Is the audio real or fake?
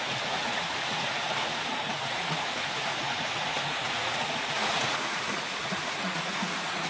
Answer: fake